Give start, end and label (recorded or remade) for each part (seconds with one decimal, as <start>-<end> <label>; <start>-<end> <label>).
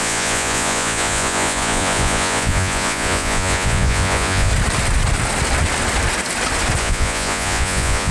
0.0-4.5 remade; 4.5-6.8 recorded; 6.8-8.1 remade